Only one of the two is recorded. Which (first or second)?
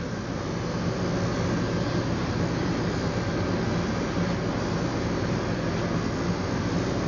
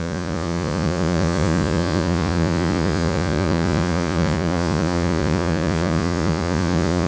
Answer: first